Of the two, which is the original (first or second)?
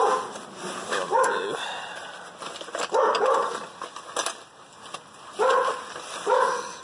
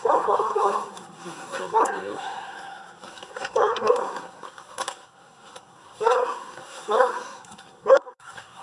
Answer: first